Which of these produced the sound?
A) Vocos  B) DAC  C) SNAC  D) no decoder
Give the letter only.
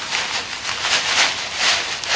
D